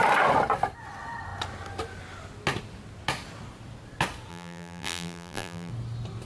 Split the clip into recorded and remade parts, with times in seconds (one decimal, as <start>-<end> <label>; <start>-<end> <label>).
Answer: 0.0-4.3 recorded; 4.3-5.7 remade; 5.7-6.3 recorded